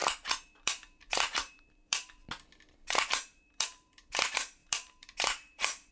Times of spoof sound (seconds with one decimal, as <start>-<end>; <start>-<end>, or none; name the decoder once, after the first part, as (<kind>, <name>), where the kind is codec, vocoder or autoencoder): 0.6-2.2 (vocoder, BigVGAN v2); 3.1-5.9